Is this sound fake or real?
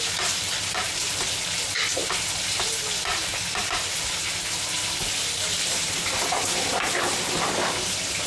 real